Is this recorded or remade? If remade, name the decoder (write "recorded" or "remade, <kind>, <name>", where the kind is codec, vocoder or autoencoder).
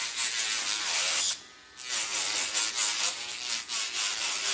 recorded